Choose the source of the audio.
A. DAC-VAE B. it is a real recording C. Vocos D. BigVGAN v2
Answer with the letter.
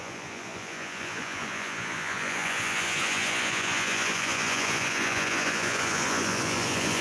C